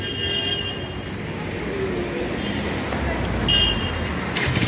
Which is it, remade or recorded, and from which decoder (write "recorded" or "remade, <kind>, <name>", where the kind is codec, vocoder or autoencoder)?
recorded